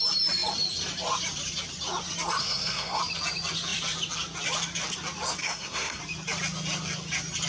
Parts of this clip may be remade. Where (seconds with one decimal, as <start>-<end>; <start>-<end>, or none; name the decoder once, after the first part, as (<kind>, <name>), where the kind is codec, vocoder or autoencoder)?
2.4-3.0 (codec, SNAC); 5.4-6.0